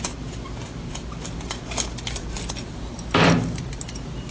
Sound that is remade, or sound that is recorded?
recorded